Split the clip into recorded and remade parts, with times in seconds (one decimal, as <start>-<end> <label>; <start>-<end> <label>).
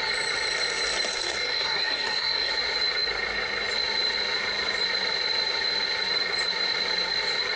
0.0-1.1 recorded; 1.1-2.5 remade; 2.5-7.6 recorded